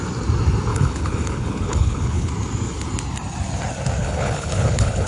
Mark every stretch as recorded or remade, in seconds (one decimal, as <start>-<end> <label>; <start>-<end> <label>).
0.0-0.7 recorded; 0.7-2.3 remade; 2.3-4.0 recorded; 4.0-5.1 remade